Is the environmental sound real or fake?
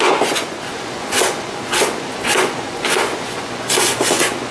fake